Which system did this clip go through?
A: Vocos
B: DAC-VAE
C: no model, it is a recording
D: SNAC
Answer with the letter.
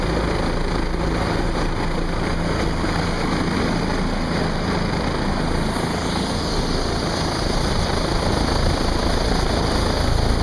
C